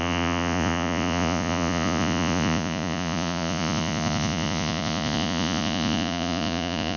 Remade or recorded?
remade